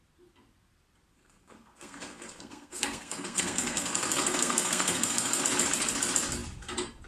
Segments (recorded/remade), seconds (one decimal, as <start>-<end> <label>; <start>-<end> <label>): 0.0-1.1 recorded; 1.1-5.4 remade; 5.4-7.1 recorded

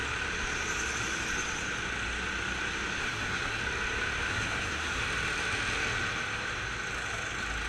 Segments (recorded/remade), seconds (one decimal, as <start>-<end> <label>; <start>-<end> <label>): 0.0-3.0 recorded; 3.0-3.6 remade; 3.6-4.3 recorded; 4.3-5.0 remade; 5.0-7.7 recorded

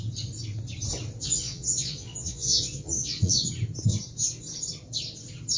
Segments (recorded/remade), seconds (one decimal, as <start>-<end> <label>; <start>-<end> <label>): 0.0-1.2 recorded; 1.2-3.4 remade; 3.4-5.6 recorded

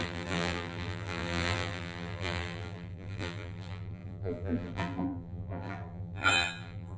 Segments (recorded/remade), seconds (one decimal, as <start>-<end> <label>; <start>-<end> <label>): 0.0-7.0 remade

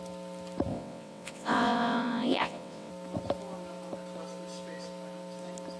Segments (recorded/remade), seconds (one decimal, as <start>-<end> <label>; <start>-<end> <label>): 0.0-0.7 recorded; 0.7-2.9 remade; 2.9-5.8 recorded